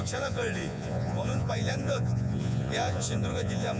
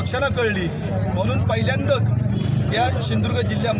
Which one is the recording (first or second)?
second